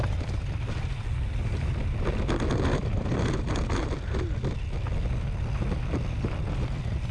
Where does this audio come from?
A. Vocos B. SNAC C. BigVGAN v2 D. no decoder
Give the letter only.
D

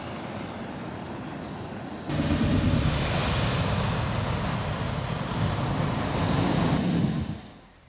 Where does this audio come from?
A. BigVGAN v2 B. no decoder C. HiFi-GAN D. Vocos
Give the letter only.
B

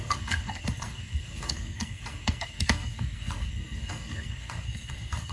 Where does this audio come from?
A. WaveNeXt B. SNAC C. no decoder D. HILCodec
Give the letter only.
B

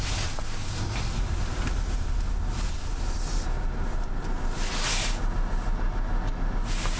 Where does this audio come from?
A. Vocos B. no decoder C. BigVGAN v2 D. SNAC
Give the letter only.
B